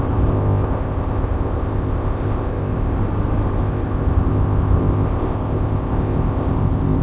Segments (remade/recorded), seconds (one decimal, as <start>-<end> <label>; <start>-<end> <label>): 0.0-3.0 remade; 3.0-3.6 recorded; 3.6-7.0 remade